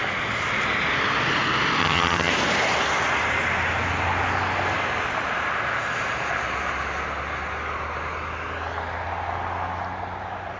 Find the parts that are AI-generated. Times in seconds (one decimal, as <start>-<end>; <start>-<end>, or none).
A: 1.8-2.3